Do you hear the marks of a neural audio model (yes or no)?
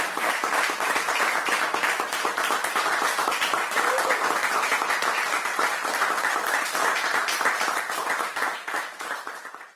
yes